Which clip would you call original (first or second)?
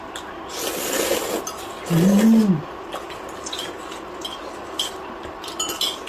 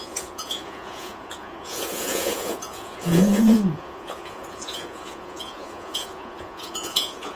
first